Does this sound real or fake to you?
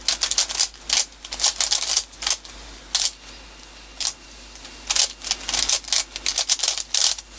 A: real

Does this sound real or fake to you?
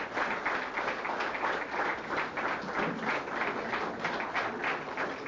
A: real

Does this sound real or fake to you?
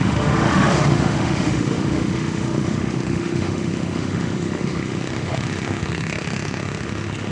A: fake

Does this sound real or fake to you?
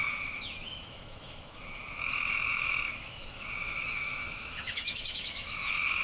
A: fake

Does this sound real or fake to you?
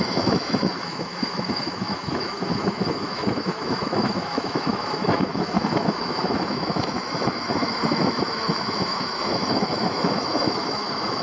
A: fake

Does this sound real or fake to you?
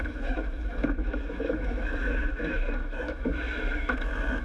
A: fake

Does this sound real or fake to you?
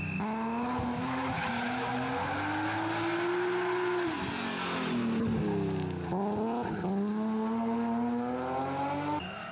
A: real